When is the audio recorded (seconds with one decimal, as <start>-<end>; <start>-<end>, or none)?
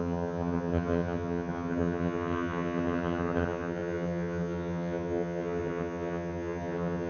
none